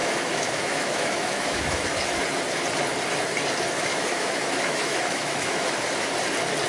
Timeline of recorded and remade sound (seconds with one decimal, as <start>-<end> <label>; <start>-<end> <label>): 0.0-2.2 remade; 2.2-3.9 recorded; 3.9-5.9 remade; 5.9-6.7 recorded

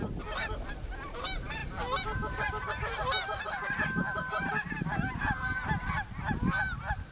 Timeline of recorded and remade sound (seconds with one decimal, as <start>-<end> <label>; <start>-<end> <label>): 0.0-1.6 recorded; 1.6-5.9 remade; 5.9-7.1 recorded

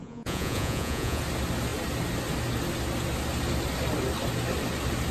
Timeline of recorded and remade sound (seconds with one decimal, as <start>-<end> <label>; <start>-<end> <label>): 0.0-1.2 remade; 1.2-5.1 recorded

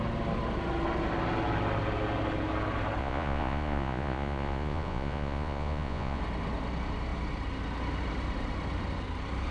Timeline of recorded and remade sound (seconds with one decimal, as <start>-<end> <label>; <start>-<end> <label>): 0.0-3.0 recorded; 3.0-6.2 remade; 6.2-9.5 recorded

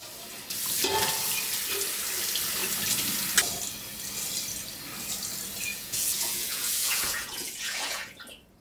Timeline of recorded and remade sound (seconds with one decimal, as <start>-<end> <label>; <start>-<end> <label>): 0.0-5.7 recorded; 5.7-8.2 remade; 8.2-8.6 recorded